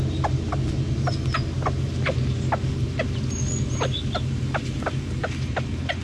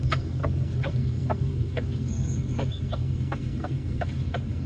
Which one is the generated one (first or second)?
second